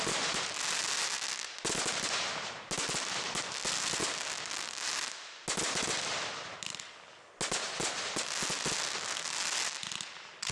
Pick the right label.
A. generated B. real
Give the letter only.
B